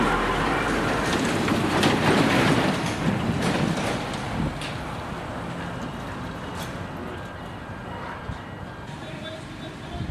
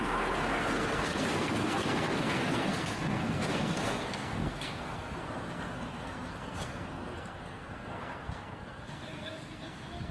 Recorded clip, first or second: first